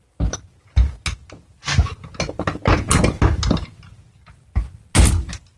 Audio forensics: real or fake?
real